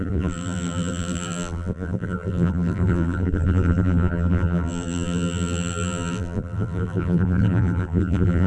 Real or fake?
fake